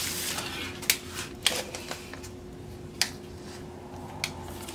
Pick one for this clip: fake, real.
real